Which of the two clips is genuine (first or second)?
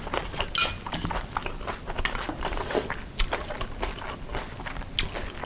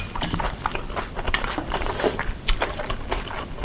first